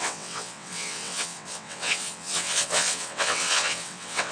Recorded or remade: remade